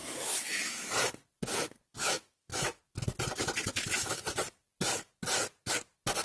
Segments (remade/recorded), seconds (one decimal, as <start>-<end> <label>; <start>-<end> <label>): 0.0-0.9 remade; 0.9-2.0 recorded; 2.0-2.8 remade; 2.8-3.7 recorded; 3.7-4.2 remade; 4.2-6.2 recorded